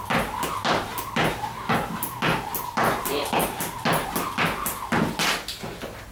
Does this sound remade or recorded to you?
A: recorded